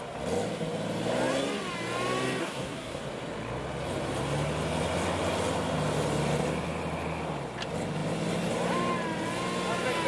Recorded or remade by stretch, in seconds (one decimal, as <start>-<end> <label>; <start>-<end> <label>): 0.0-2.4 recorded; 2.4-3.0 remade; 3.0-10.1 recorded